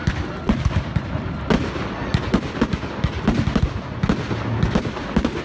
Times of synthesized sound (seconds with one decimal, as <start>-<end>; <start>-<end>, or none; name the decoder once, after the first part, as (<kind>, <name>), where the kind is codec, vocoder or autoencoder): none